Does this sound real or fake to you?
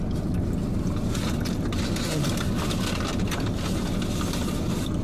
real